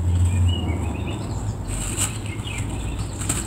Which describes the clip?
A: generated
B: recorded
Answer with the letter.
B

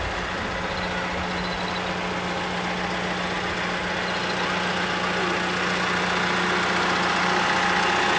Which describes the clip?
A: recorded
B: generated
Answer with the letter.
A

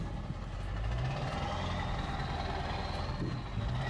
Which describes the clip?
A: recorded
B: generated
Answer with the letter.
A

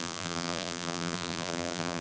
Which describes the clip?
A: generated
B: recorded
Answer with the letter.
A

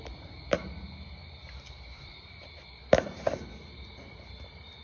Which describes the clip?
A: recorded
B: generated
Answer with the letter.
B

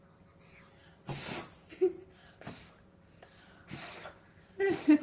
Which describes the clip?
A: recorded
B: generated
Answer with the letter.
A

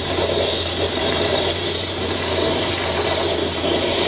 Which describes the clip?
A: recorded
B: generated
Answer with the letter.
B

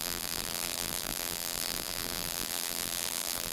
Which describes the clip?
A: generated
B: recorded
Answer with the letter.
A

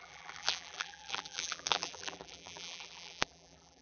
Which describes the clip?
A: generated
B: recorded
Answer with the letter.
A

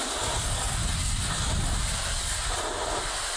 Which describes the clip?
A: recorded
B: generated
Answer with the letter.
A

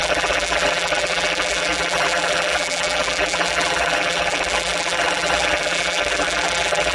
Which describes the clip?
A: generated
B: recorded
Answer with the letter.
A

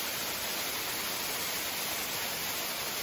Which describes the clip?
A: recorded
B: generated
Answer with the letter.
A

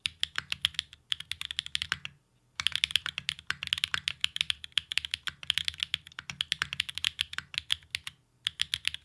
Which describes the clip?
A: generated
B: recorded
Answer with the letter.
B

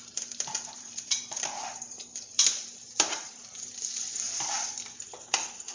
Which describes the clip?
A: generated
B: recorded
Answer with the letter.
A